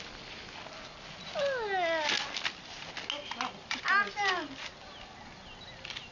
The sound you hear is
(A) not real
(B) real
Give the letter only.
B